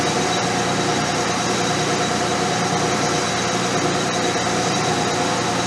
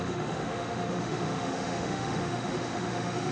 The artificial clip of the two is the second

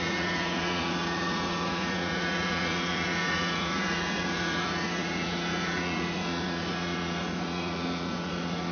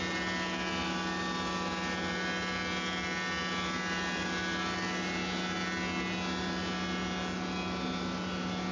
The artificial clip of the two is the first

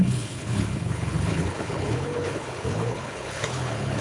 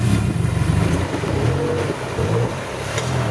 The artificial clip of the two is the first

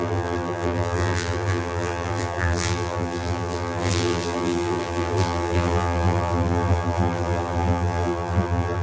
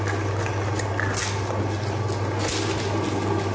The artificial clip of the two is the first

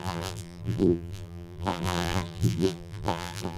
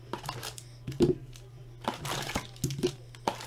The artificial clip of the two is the first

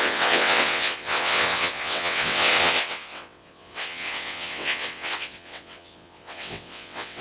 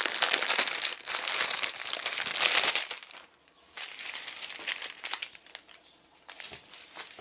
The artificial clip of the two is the first